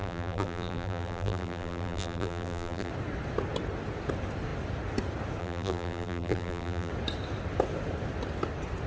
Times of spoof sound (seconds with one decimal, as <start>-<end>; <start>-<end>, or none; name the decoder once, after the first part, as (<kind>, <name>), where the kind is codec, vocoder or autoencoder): 0.0-2.9 (vocoder, BigVGAN v2); 5.4-6.9